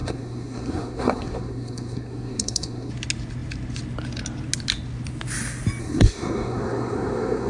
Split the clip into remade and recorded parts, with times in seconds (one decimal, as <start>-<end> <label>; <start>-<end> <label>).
0.0-2.9 remade; 2.9-5.8 recorded; 5.8-7.5 remade